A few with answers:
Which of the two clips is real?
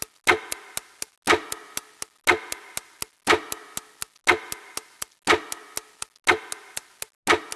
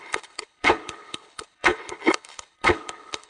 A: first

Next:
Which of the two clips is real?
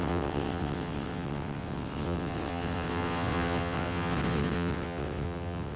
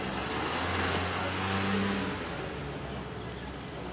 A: second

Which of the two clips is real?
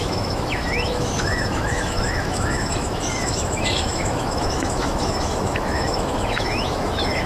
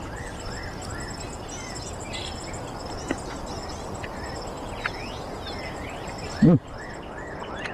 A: second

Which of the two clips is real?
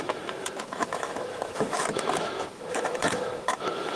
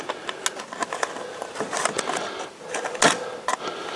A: second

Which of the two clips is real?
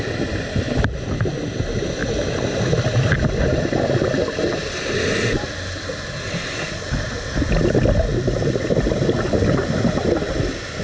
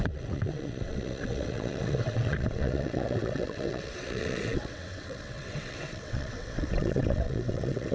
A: first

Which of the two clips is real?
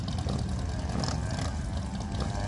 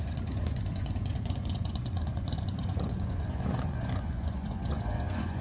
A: first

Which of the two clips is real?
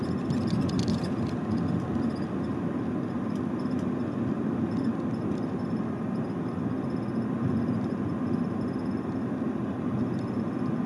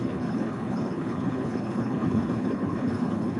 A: first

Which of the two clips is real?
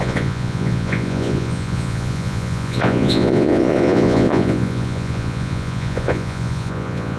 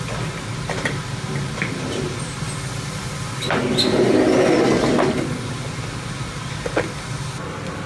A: second